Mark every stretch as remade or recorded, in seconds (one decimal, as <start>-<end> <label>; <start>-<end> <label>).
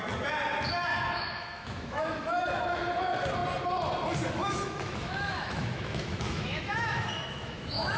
0.0-0.9 recorded; 0.9-2.8 remade; 2.8-4.4 recorded; 4.4-8.0 remade